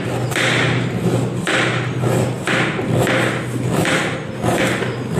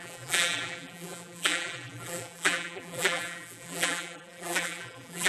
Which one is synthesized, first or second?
second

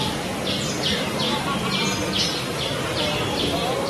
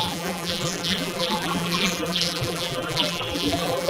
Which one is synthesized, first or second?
second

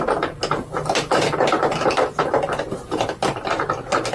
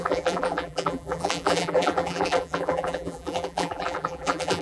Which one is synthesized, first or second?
second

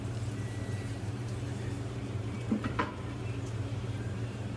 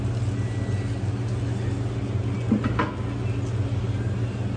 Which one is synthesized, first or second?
first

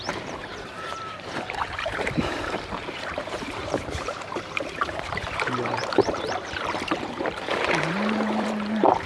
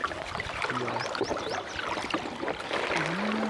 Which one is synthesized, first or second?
first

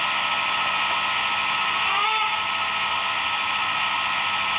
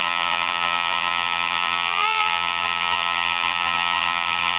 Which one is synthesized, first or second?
second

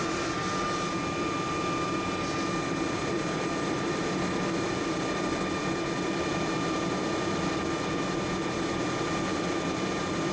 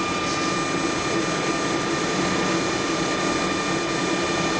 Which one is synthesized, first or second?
first